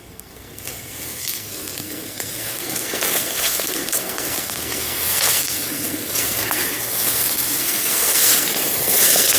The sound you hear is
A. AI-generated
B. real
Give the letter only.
A